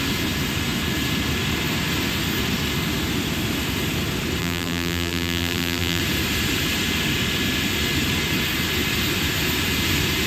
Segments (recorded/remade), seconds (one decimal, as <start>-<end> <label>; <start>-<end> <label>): 0.0-4.4 recorded; 4.4-6.0 remade; 6.0-10.3 recorded